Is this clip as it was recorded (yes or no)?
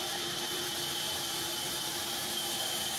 no